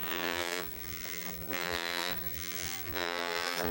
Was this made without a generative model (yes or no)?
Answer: no